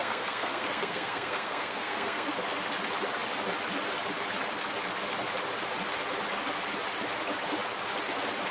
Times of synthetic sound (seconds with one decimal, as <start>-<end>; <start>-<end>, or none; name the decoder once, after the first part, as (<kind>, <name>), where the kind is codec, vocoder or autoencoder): 0.0-2.3 (codec, SNAC)